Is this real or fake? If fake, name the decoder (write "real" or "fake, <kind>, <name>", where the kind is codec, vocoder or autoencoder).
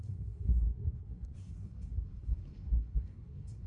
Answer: fake, codec, SNAC